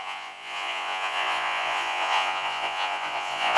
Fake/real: fake